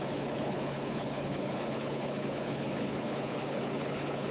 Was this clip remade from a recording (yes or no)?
yes